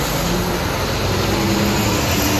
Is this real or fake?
real